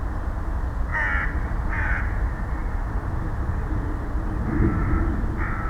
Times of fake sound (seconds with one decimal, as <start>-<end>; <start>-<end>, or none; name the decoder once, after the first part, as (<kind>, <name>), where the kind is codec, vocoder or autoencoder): none